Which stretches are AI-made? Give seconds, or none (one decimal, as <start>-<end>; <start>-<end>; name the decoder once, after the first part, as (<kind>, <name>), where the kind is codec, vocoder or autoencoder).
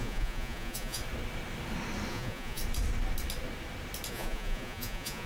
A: 0.0-1.0 (vocoder, Vocos); 2.1-2.6; 4.1-5.3